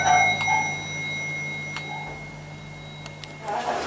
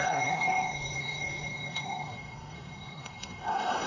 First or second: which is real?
first